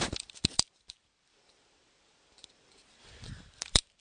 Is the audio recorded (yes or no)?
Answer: no